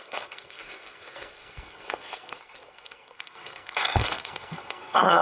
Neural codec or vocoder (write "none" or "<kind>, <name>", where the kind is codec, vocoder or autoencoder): codec, SNAC